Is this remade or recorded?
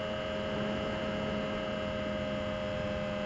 recorded